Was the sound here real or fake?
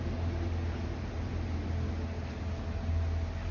real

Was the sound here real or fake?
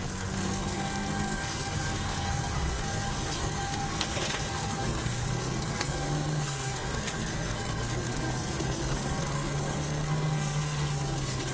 fake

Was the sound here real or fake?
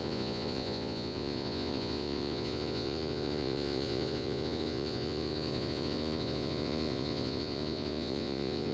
fake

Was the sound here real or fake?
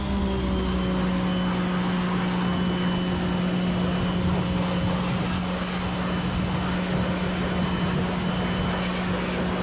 real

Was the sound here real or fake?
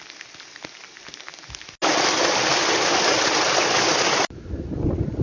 real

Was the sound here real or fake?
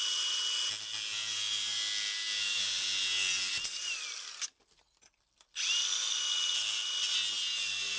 real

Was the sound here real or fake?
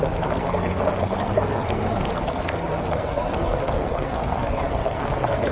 fake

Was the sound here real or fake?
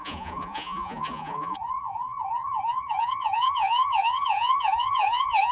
fake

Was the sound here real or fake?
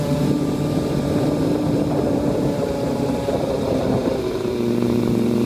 fake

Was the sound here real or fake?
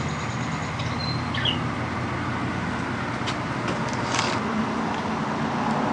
real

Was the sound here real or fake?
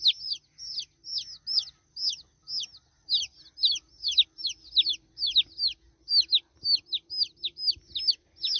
real